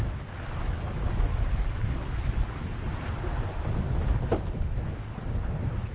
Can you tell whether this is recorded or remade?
recorded